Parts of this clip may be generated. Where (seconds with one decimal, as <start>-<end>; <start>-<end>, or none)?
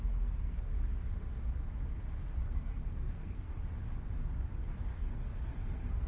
0.0-0.7; 2.4-3.5; 4.6-6.1